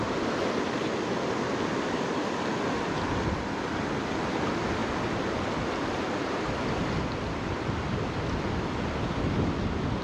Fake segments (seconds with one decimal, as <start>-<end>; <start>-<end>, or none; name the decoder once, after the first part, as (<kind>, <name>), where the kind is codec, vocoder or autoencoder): none

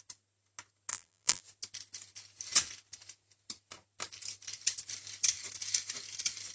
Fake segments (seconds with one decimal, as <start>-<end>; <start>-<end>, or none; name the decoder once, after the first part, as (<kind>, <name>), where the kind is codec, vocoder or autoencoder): 0.9-1.4 (vocoder, BigVGAN v2)